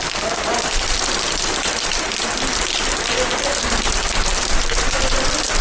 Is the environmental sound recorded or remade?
remade